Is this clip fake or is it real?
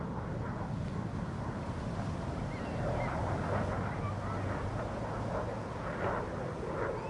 real